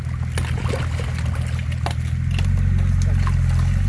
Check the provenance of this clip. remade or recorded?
recorded